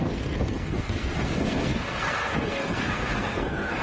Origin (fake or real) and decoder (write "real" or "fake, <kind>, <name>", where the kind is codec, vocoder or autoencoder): fake, codec, SNAC